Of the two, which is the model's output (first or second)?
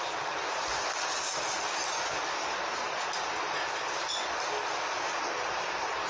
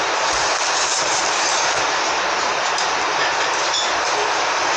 second